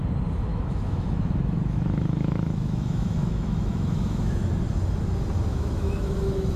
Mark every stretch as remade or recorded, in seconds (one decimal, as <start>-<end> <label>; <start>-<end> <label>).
0.0-0.5 recorded; 0.5-4.5 remade; 4.5-5.5 recorded; 5.5-6.6 remade